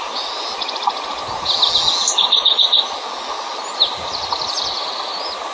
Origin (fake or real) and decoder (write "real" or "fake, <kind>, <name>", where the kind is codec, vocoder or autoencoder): real